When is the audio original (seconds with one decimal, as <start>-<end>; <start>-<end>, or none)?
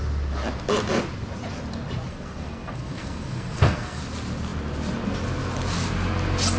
0.0-2.1; 4.0-6.6